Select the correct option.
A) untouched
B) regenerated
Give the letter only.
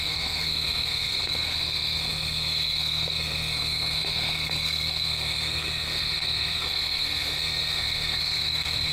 B